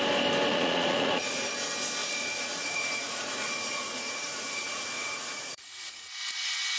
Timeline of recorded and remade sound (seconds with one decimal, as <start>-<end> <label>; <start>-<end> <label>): 0.0-0.5 recorded; 0.5-1.5 remade; 1.5-2.0 recorded; 2.0-6.1 remade; 6.1-6.8 recorded